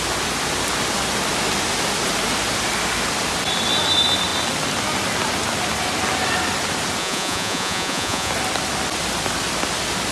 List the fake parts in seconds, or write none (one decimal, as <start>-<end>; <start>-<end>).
7.0-8.3